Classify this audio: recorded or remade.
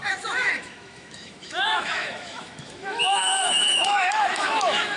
remade